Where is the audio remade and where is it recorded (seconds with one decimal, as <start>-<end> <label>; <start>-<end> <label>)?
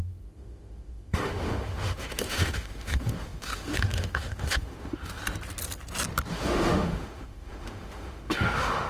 0.0-5.2 remade; 5.2-6.3 recorded; 6.3-8.9 remade